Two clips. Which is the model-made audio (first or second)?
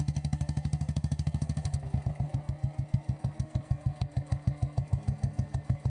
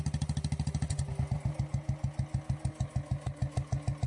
first